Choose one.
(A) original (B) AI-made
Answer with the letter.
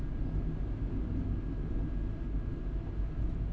A